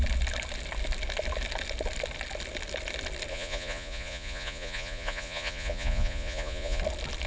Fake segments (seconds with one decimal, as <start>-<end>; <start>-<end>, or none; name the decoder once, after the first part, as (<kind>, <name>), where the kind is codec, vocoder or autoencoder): 3.3-6.8 (vocoder, Vocos)

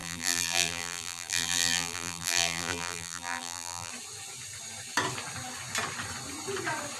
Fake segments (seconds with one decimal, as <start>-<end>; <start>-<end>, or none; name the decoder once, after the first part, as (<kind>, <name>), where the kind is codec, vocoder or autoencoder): 0.0-3.9 (vocoder, BigVGAN v2)

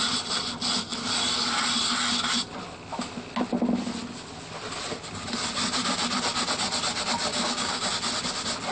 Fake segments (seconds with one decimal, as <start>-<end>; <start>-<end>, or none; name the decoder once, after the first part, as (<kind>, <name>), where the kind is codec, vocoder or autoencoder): 7.3-7.9 (codec, DAC)

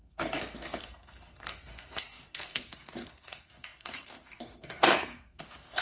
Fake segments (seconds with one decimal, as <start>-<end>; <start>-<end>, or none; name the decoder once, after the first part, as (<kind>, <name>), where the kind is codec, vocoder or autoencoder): 0.0-5.8 (codec, SNAC)